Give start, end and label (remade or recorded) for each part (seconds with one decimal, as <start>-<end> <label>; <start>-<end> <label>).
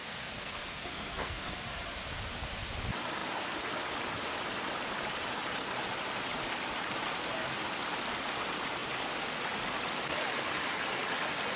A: 0.0-1.5 remade; 1.5-11.6 recorded